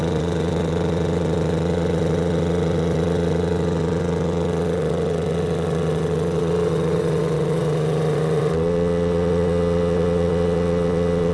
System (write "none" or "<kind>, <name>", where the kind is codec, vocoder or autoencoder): vocoder, WaveNeXt